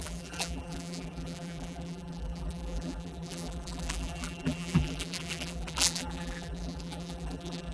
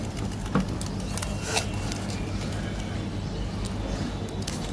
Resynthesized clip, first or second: first